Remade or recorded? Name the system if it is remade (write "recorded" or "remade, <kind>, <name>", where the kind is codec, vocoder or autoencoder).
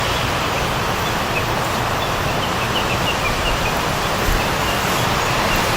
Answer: recorded